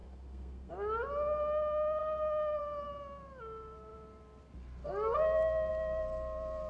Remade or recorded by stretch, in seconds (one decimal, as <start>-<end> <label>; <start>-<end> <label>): 0.0-0.7 remade; 0.7-6.7 recorded